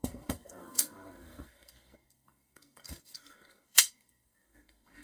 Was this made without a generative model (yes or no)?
no